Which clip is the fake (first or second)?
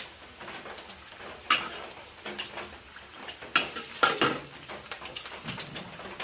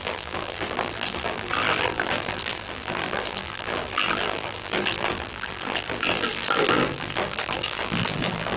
second